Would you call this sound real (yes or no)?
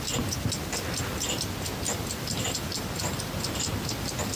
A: yes